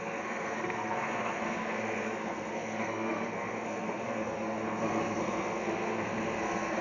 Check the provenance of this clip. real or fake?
fake